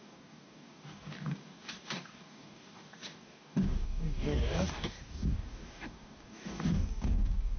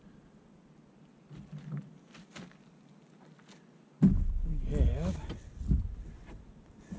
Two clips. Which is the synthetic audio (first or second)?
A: first